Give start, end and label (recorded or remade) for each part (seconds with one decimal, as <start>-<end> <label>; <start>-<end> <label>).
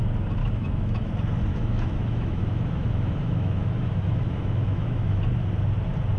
0.0-0.4 recorded; 0.4-1.1 remade; 1.1-1.5 recorded; 1.5-5.2 remade; 5.2-6.2 recorded